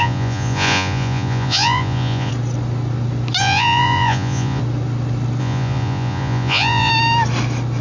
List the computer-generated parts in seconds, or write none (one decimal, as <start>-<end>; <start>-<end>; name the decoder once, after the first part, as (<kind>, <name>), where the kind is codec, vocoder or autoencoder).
0.0-2.3 (vocoder, Vocos); 3.4-4.6; 5.4-6.9